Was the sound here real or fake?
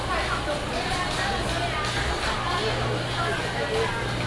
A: real